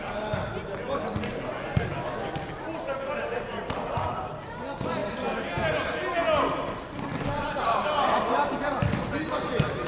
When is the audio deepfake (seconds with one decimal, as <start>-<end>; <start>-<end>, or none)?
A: none